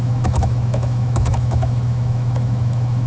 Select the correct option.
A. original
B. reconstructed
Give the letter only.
B